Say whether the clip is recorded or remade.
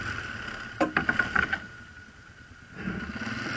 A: recorded